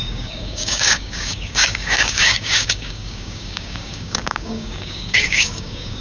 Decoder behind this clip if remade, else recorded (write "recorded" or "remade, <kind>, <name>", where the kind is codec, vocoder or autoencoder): remade, codec, DAC